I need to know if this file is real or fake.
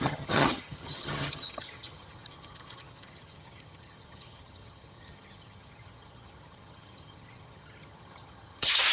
fake